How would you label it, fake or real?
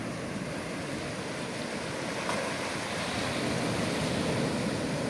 real